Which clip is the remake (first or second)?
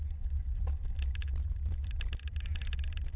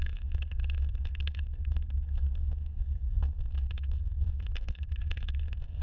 second